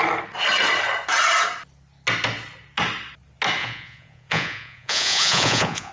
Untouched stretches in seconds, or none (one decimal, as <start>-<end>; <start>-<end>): 0.0-3.6